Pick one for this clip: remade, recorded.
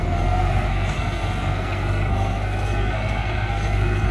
remade